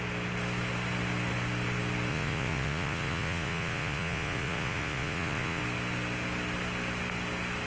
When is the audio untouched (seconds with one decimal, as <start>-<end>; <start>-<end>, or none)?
0.0-2.1; 5.6-7.7